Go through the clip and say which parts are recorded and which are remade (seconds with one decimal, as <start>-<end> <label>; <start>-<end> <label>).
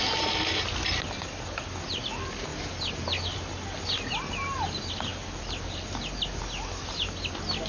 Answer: 0.0-7.7 recorded